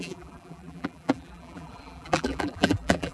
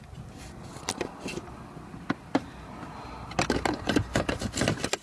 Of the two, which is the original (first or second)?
second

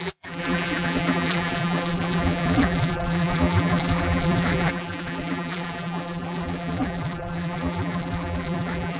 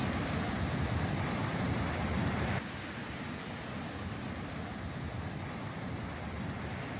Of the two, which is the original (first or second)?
second